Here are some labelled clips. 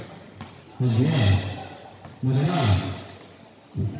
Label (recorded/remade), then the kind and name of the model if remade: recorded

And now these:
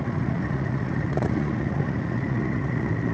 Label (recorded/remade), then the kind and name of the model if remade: remade, vocoder, Vocos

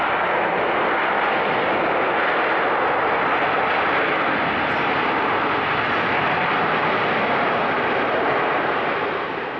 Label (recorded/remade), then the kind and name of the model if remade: recorded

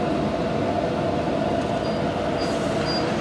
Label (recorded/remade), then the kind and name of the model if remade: recorded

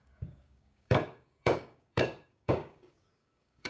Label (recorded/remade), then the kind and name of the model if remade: remade, codec, DAC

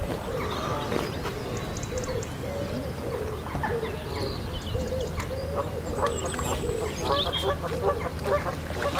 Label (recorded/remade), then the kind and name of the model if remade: recorded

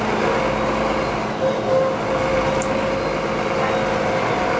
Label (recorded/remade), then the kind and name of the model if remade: recorded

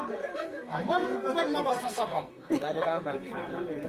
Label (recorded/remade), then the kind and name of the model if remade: remade, codec, SNAC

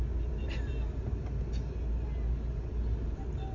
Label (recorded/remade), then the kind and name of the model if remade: recorded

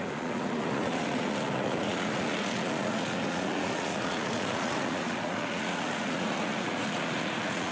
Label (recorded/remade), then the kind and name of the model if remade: remade, vocoder, Vocos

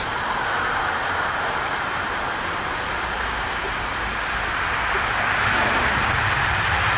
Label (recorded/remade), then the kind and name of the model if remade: recorded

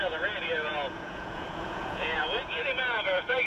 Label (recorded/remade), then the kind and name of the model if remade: remade, vocoder, Vocos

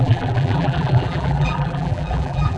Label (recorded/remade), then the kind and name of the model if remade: remade, vocoder, BigVGAN v2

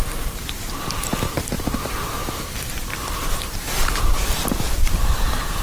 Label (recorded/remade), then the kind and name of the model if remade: remade, vocoder, BigVGAN v2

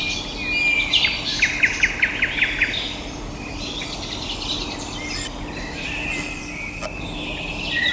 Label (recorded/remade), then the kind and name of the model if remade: recorded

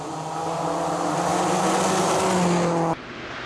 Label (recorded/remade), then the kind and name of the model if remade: recorded